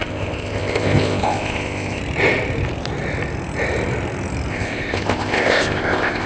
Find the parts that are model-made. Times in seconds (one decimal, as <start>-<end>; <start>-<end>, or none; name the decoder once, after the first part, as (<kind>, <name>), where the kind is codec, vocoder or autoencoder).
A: 0.0-2.0 (codec, ZipCodec); 4.5-6.3